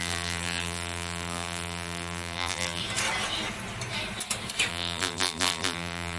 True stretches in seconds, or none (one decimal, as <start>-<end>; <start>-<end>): 2.8-4.7